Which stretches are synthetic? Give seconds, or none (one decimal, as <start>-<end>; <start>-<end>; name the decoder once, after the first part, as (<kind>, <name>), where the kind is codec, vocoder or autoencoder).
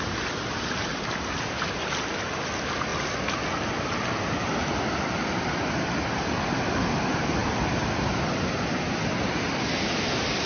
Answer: none